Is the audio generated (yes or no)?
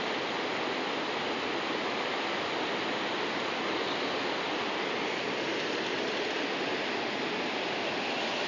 no